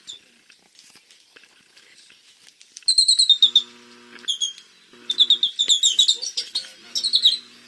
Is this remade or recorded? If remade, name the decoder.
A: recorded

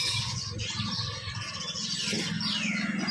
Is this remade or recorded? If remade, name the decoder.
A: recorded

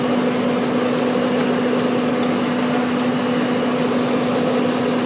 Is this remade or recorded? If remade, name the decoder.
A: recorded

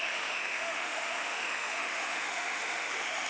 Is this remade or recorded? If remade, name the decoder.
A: remade, autoencoder, DAC-VAE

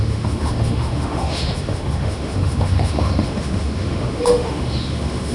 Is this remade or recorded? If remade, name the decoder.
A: remade, autoencoder, DAC-VAE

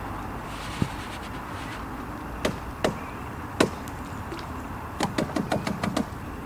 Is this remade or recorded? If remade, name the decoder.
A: recorded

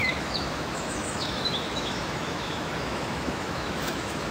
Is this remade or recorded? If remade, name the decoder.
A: remade, autoencoder, DAC-VAE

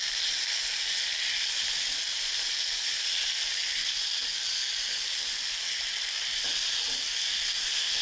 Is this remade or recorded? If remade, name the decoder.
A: recorded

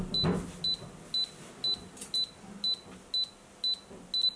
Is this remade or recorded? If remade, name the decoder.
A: recorded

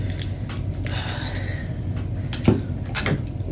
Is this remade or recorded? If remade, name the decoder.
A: recorded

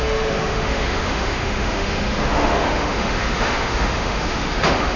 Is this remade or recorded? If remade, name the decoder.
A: remade, autoencoder, DAC-VAE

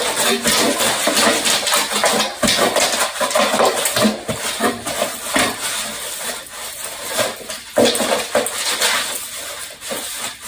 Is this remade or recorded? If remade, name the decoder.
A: recorded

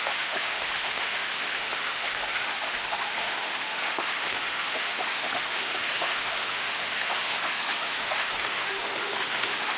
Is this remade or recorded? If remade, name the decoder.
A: remade, autoencoder, DAC-VAE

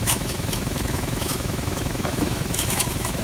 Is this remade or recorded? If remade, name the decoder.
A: remade, autoencoder, DAC-VAE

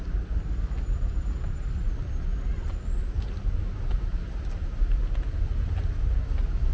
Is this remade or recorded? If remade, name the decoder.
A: recorded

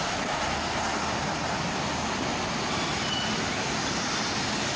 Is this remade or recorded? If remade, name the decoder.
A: recorded